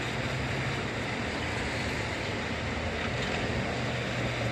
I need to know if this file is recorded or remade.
recorded